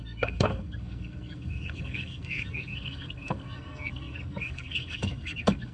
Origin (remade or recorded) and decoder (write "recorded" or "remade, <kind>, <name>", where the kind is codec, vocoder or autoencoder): remade, codec, SNAC